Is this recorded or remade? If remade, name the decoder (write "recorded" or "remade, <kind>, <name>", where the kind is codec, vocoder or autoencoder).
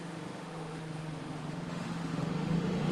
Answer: remade, autoencoder, DAC-VAE